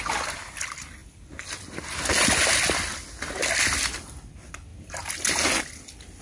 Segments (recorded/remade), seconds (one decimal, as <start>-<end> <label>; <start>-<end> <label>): 0.0-6.2 recorded